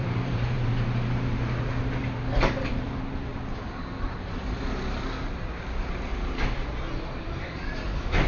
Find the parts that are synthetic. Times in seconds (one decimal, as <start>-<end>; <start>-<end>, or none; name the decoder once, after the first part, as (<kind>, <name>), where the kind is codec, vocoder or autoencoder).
0.0-2.0 (vocoder, BigVGAN v2); 2.7-3.3; 4.0-6.1; 7.2-8.3